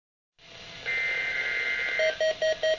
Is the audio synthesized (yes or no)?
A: no